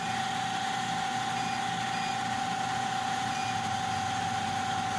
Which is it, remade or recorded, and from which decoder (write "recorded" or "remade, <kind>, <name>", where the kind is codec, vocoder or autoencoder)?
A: recorded